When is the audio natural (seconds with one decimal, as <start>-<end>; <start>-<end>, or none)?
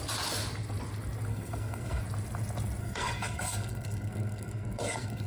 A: 0.0-1.3; 2.0-2.8